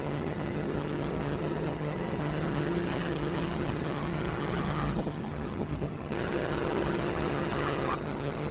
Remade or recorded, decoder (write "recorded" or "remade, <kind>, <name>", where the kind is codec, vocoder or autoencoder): remade, vocoder, HiFi-GAN